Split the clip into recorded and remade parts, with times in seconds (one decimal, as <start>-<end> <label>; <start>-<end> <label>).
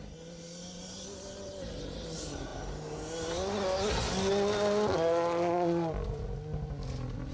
0.0-7.3 recorded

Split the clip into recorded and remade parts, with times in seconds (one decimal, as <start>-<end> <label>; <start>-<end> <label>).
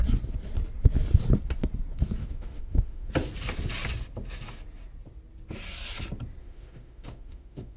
0.0-2.2 recorded; 2.2-3.1 remade; 3.1-6.4 recorded; 6.4-7.8 remade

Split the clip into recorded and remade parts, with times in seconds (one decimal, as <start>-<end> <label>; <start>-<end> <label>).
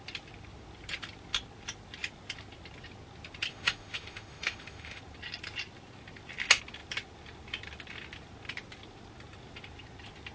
0.0-3.5 recorded; 3.5-5.0 remade; 5.0-10.3 recorded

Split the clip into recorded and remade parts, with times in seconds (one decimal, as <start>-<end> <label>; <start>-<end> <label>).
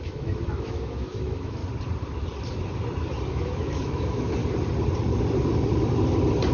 0.0-1.6 remade; 1.6-3.3 recorded; 3.3-4.4 remade; 4.4-6.5 recorded